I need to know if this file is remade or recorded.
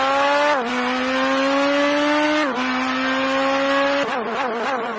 recorded